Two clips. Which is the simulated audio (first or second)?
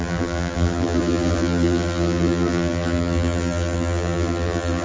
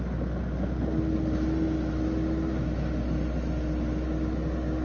first